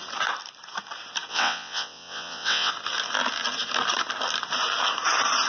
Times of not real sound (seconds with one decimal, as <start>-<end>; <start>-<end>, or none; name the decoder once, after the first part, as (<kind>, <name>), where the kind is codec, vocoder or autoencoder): 1.3-2.7 (vocoder, WaveNeXt)